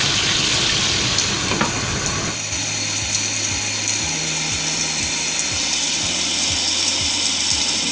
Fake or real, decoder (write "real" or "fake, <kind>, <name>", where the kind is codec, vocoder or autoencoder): real